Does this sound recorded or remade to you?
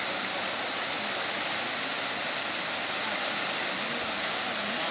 recorded